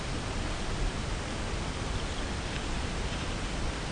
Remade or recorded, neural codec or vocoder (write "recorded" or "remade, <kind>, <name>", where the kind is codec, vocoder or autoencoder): recorded